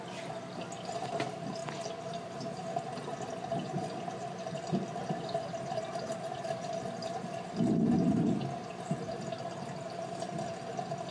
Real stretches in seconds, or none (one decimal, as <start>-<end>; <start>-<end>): 0.0-11.1